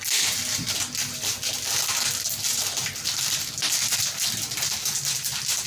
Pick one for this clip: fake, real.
real